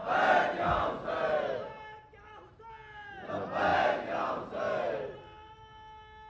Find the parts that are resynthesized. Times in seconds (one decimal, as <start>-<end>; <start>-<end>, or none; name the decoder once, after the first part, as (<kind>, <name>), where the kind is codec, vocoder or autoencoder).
none